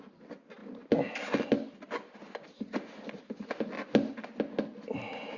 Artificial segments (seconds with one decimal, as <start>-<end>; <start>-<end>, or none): none